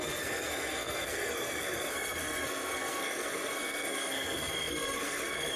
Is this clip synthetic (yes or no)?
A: yes